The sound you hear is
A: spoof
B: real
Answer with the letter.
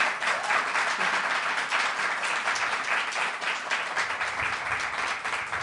B